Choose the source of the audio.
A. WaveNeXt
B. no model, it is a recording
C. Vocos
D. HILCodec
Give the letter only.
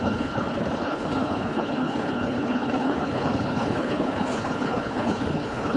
D